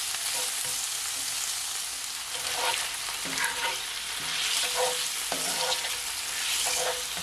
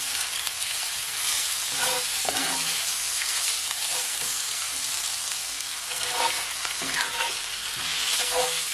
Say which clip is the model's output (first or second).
second